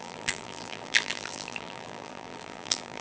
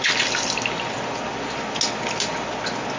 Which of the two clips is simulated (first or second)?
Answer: first